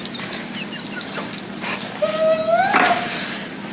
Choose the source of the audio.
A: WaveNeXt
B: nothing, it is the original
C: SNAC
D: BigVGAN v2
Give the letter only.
B